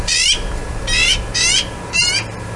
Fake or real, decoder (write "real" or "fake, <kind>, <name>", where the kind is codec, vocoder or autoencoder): real